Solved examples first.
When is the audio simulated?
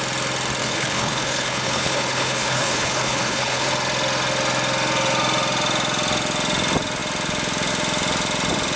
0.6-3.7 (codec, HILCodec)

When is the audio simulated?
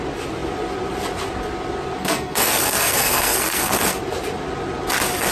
2.0-4.0 (codec, SNAC)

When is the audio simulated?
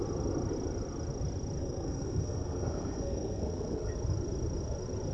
1.6-3.9 (codec, SNAC)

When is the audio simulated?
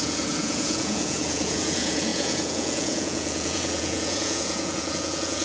0.0-5.4 (vocoder, Vocos)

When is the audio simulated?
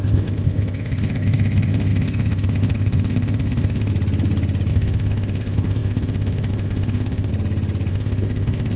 0.0-3.9 (codec, ZipCodec); 4.7-7.3; 7.9-8.8